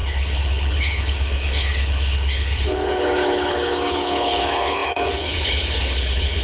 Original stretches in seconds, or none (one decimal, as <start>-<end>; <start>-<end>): none